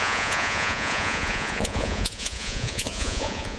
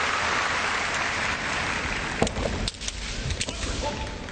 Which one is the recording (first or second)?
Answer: second